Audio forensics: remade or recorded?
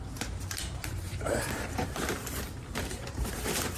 remade